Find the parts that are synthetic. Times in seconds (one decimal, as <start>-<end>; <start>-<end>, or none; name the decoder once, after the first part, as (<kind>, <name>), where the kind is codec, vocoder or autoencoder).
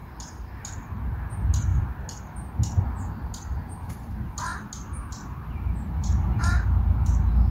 none